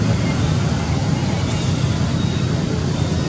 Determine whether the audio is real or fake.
real